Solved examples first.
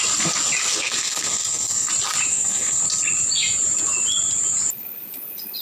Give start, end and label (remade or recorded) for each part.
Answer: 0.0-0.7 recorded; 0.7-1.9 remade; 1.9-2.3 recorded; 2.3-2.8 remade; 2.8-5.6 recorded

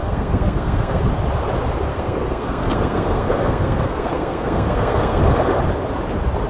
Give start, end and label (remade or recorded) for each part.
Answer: 0.0-1.0 remade; 1.0-1.9 recorded; 1.9-5.2 remade; 5.2-6.5 recorded

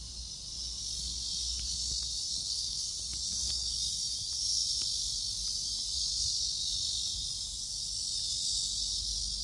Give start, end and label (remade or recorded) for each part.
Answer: 0.0-2.3 recorded; 2.3-2.9 remade; 2.9-9.4 recorded

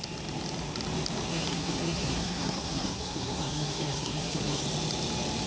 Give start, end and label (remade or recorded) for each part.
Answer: 0.0-1.3 recorded; 1.3-4.6 remade; 4.6-5.5 recorded

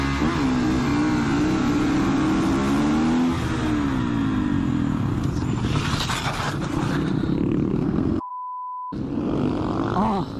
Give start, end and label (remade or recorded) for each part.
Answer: 0.0-7.7 recorded; 7.7-8.3 remade; 8.3-10.4 recorded